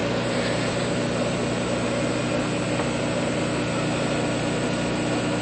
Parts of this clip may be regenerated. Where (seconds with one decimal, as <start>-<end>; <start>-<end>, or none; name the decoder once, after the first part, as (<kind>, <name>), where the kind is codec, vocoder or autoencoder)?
none

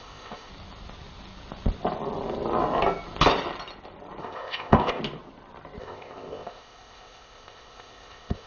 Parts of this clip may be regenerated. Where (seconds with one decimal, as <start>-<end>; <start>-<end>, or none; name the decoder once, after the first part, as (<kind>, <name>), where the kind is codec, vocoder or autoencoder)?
0.0-0.5 (codec, ZipCodec); 4.2-5.0; 5.8-8.5